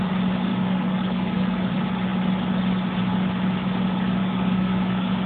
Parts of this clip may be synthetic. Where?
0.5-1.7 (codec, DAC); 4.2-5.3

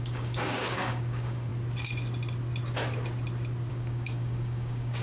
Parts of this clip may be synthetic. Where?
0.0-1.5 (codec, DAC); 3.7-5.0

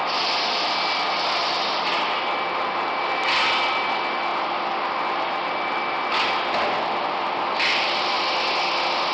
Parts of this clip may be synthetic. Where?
none

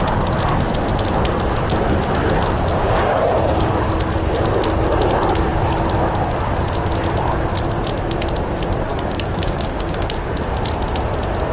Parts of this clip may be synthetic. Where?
2.8-3.8 (codec, DAC); 8.9-10.3